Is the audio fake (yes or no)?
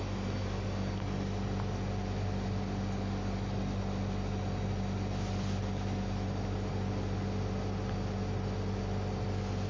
no